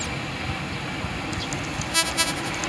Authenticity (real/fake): real